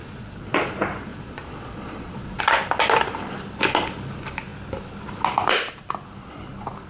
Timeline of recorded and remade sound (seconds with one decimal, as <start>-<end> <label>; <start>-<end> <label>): 0.0-0.7 remade; 0.7-1.1 recorded; 1.1-2.4 remade; 2.4-6.9 recorded